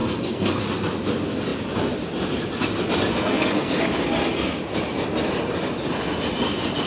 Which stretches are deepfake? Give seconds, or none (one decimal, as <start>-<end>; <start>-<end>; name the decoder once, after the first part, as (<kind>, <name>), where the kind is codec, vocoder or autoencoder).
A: 0.0-0.6 (codec, SNAC); 3.1-3.8